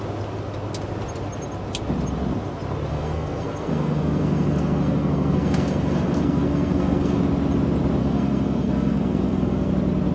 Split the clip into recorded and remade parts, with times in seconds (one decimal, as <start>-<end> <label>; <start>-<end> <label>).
0.0-2.9 recorded; 2.9-7.2 remade; 7.2-8.0 recorded; 8.0-9.7 remade; 9.7-10.1 recorded